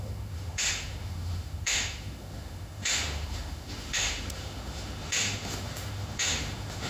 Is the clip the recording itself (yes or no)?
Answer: no